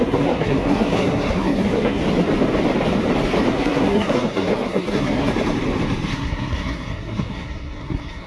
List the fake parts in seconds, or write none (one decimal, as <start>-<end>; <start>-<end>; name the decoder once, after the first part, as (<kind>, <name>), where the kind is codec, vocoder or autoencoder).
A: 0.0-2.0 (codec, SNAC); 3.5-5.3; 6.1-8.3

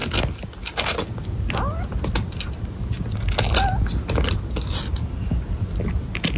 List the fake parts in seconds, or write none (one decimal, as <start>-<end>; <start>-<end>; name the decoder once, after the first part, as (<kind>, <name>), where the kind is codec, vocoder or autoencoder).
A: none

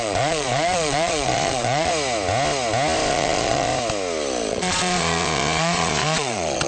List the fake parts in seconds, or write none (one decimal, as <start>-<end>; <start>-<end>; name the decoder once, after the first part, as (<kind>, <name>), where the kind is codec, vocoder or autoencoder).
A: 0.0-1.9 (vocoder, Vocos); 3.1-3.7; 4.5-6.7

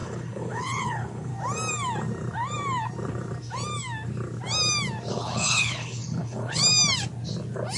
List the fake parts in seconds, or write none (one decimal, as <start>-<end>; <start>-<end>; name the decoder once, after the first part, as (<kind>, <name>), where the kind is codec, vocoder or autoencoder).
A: 0.0-1.3 (codec, HILCodec); 5.1-6.6

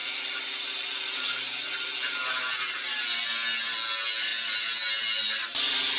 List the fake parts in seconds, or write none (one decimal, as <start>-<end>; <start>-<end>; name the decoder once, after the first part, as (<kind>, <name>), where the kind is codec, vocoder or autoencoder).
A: none

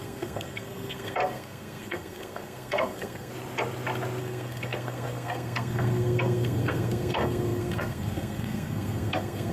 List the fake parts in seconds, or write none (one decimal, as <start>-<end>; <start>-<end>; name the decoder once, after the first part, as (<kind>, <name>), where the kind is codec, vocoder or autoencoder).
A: 0.0-3.3 (codec, SNAC); 4.2-9.5

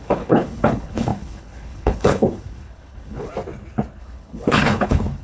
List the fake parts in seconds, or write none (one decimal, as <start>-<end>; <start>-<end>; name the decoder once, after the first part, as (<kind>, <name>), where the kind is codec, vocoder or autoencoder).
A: 0.0-3.3 (codec, HILCodec); 4.0-5.2